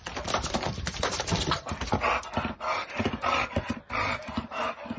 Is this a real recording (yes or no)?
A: no